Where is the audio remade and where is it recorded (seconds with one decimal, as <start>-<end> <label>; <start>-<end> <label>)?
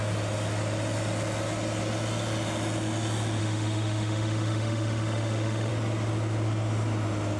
0.0-3.4 recorded; 3.4-5.7 remade; 5.7-7.4 recorded